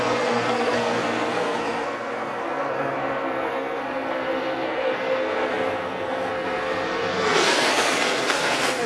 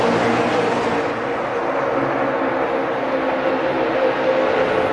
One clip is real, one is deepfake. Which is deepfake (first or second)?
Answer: first